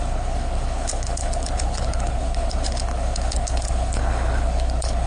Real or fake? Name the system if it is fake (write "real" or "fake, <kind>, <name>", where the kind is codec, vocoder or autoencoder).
fake, codec, HILCodec